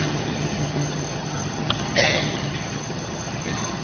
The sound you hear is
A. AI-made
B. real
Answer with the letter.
A